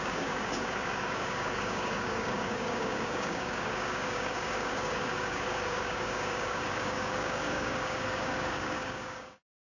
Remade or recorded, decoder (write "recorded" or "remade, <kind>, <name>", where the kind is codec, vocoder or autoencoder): remade, codec, DAC